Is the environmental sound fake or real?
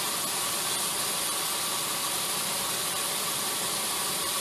real